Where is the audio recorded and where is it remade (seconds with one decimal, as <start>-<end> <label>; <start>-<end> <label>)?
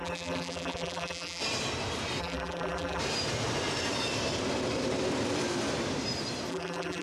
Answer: 0.0-1.4 remade; 1.4-2.2 recorded; 2.2-3.0 remade; 3.0-6.5 recorded; 6.5-7.0 remade